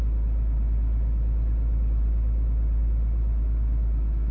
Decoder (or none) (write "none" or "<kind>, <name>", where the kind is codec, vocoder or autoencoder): none